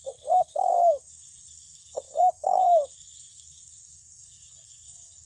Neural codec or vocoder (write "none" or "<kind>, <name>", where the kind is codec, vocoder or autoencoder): codec, SNAC